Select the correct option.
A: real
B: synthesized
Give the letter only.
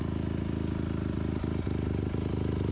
A